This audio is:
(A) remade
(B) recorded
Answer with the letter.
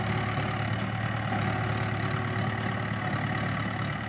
B